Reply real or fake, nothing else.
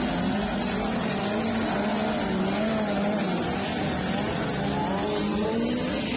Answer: real